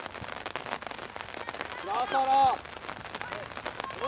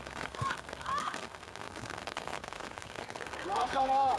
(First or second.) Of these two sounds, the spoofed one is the second